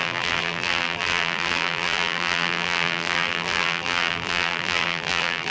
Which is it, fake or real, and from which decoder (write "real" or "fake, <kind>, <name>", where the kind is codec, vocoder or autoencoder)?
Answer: fake, vocoder, BigVGAN v2